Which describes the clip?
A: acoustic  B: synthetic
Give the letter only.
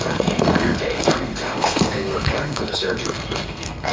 B